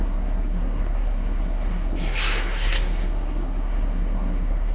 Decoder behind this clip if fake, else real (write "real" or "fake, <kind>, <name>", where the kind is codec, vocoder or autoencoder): fake, codec, SNAC